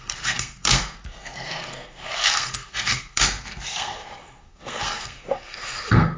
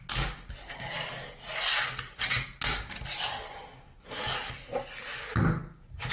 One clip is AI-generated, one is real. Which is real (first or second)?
second